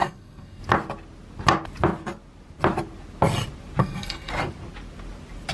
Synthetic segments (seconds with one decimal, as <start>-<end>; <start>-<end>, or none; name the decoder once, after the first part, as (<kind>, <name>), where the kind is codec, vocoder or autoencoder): 0.0-0.6 (codec, SNAC); 3.8-4.3